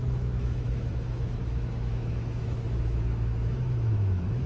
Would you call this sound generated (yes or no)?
yes